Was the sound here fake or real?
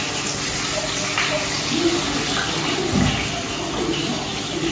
real